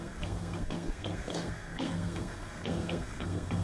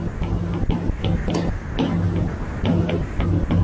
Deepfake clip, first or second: first